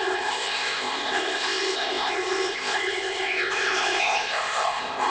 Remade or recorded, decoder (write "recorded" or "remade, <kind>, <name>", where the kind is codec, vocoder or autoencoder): remade, codec, ZipCodec